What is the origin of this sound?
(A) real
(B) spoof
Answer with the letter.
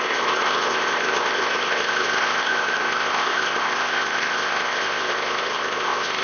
B